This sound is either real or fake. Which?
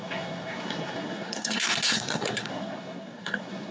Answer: fake